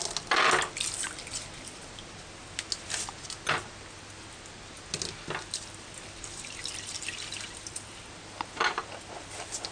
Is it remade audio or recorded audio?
recorded